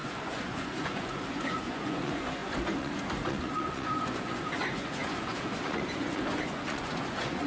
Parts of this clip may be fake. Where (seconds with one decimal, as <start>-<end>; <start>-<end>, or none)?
0.0-7.5